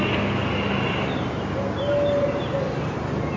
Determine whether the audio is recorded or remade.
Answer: recorded